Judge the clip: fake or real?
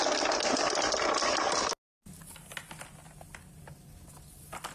real